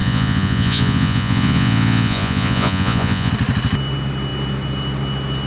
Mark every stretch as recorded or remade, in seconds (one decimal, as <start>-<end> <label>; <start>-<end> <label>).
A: 0.0-3.3 remade; 3.3-5.5 recorded